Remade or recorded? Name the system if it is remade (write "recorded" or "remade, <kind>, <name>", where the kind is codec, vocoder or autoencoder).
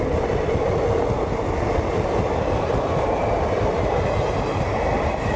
recorded